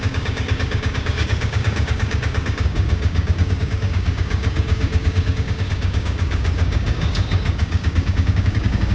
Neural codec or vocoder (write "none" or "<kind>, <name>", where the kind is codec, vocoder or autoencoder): codec, DAC